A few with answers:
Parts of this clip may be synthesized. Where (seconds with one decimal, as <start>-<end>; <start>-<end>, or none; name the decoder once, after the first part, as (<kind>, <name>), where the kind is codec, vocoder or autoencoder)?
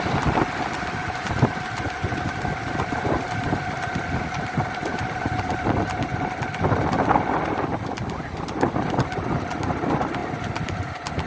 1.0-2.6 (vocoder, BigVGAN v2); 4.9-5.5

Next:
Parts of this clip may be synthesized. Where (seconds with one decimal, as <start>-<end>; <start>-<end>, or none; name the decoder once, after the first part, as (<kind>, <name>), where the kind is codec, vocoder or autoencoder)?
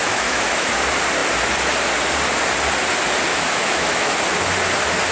0.0-0.7 (autoencoder, DAC-VAE); 3.3-4.1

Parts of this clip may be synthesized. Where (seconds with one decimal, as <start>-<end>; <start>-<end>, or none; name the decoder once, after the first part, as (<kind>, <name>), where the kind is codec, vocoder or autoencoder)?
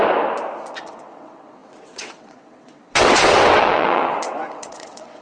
0.8-5.2 (vocoder, WaveNeXt)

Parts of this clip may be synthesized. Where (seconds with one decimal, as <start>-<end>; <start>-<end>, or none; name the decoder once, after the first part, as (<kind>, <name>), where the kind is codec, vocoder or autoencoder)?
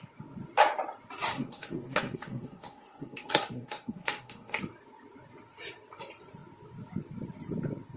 1.3-4.6 (codec, SNAC)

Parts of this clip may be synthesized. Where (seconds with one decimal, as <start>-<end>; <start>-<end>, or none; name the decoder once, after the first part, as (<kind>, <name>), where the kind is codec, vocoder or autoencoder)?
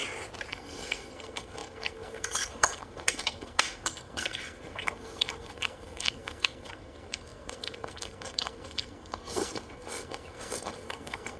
0.5-11.4 (codec, SNAC)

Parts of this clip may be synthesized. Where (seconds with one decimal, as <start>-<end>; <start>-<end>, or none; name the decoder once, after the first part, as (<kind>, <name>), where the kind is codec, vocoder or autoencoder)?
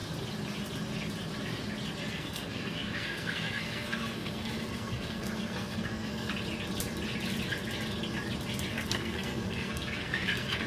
2.1-6.3 (codec, SNAC); 8.7-10.7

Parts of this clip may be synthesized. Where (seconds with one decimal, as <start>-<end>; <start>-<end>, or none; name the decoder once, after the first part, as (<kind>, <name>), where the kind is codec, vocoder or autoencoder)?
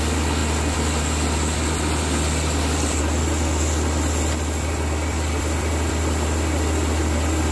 none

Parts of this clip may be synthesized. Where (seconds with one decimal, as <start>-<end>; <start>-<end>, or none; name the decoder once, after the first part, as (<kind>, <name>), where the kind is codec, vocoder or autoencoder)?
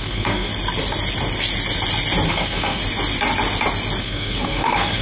0.0-0.5 (codec, SNAC); 2.3-2.8; 4.0-5.0